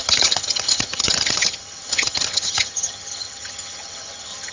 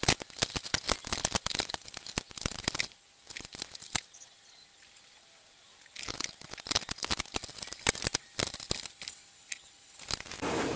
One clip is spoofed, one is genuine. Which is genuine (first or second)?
second